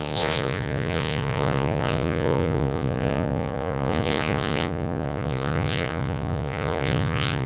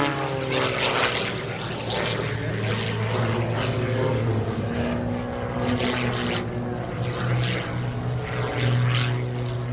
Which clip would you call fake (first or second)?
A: first